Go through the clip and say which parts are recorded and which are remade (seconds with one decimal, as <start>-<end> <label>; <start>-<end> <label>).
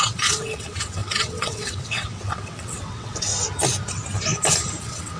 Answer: 0.0-3.3 remade; 3.3-4.8 recorded; 4.8-5.2 remade